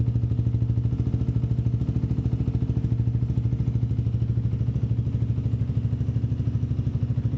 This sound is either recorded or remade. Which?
recorded